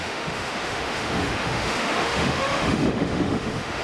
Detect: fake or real fake